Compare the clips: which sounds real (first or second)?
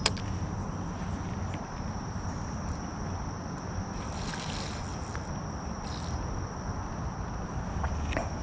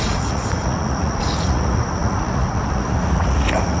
first